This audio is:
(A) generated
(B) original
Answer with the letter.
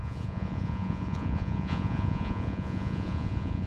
A